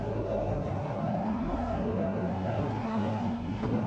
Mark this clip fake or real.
fake